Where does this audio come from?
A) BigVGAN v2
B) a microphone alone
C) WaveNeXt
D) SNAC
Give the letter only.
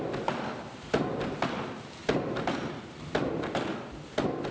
B